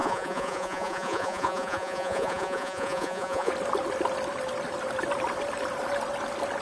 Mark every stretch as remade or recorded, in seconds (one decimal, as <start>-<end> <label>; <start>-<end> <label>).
0.0-3.5 remade; 3.5-6.6 recorded